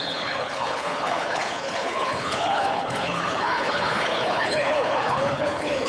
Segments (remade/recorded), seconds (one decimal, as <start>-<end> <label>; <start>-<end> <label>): 0.0-5.9 remade